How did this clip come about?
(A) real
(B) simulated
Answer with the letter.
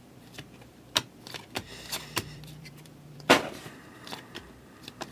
B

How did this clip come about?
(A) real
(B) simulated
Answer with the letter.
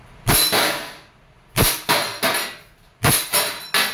A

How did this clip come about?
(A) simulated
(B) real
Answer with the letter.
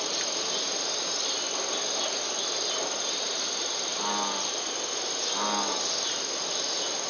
B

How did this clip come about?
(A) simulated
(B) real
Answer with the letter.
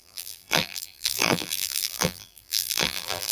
A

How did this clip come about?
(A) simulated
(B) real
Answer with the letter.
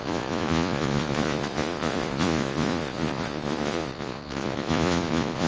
A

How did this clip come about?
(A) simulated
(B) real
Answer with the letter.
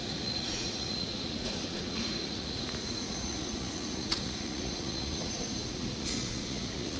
A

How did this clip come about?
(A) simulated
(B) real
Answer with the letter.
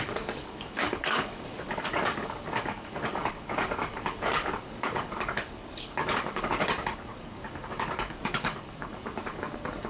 A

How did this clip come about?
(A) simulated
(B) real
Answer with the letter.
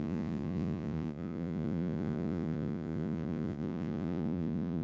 A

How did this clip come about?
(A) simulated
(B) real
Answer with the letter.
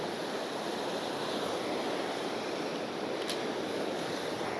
B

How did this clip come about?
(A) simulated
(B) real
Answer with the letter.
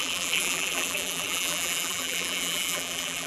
A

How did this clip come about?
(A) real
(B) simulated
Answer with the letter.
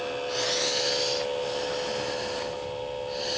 A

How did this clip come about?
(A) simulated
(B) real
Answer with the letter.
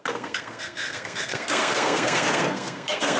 A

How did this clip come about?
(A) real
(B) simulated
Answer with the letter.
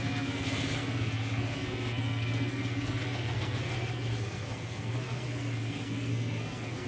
B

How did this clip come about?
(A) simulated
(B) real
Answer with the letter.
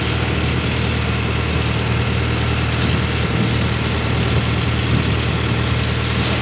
B